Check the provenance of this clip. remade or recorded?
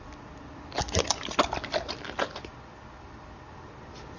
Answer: recorded